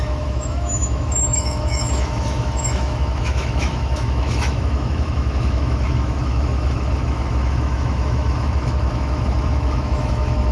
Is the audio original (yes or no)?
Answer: no